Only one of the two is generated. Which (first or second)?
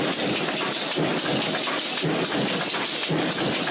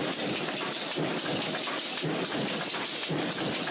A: second